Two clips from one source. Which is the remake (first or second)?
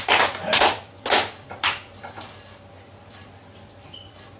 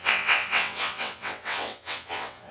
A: second